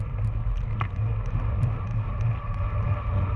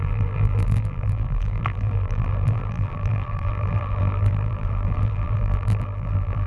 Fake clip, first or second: second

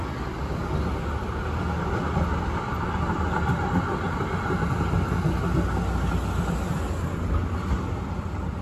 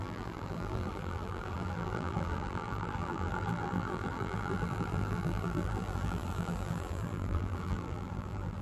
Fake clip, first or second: second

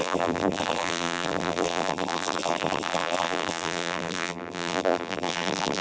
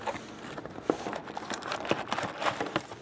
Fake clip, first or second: first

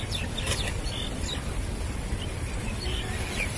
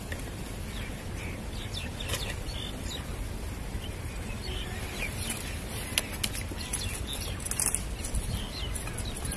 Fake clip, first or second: first